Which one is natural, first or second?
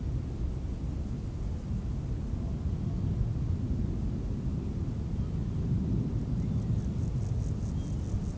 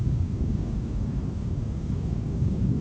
first